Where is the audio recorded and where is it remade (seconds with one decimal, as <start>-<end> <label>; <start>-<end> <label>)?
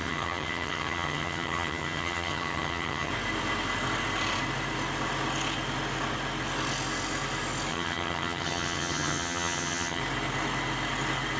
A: 0.0-3.1 remade; 3.1-7.7 recorded; 7.7-10.0 remade; 10.0-11.4 recorded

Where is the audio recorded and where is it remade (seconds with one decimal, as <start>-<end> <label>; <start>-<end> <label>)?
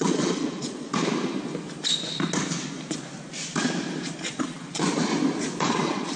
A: 0.0-0.9 remade; 0.9-4.3 recorded; 4.3-5.1 remade; 5.1-5.6 recorded; 5.6-6.2 remade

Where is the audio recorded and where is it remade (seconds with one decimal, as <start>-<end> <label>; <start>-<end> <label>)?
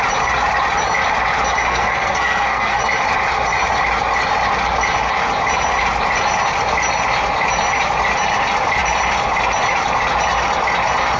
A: 0.0-1.7 recorded; 1.7-2.8 remade; 2.8-11.2 recorded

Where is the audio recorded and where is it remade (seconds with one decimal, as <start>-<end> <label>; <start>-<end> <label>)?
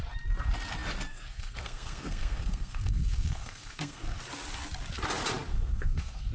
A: 0.0-1.1 recorded; 1.1-4.2 remade; 4.2-5.5 recorded; 5.5-6.3 remade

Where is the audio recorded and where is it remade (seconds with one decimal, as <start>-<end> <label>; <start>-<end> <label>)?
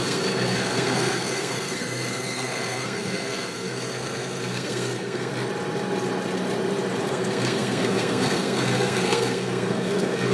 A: 0.0-5.3 remade; 5.3-7.0 recorded; 7.0-10.3 remade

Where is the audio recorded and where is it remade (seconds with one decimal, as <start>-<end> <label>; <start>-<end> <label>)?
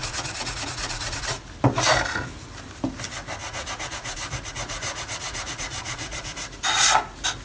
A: 0.0-1.4 remade; 1.4-3.4 recorded; 3.4-6.3 remade; 6.3-7.4 recorded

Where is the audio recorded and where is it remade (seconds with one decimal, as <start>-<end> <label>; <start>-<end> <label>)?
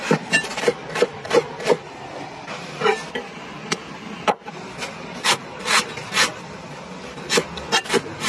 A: 0.0-8.3 recorded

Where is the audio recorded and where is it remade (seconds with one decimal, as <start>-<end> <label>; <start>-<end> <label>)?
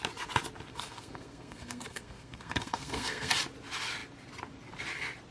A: 0.0-0.7 recorded; 0.7-3.3 remade; 3.3-5.3 recorded